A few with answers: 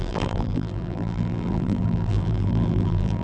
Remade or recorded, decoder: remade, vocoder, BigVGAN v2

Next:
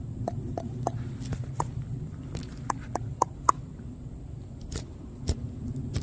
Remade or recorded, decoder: recorded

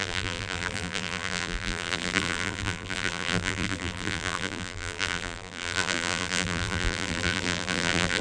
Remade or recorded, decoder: remade, vocoder, BigVGAN v2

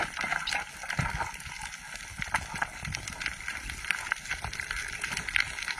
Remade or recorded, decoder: recorded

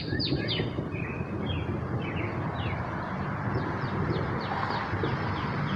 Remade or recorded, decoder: recorded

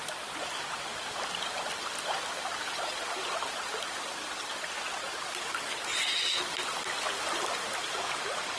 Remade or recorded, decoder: remade, vocoder, BigVGAN v2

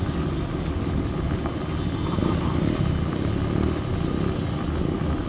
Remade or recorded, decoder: recorded